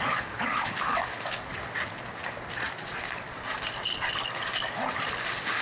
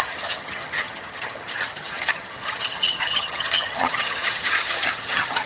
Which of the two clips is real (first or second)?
first